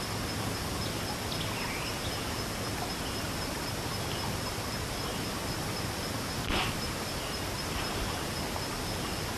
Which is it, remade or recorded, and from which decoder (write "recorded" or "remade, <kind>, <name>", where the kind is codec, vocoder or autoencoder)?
recorded